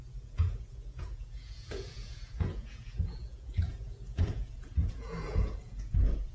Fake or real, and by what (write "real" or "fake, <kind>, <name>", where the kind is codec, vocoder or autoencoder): fake, vocoder, Vocos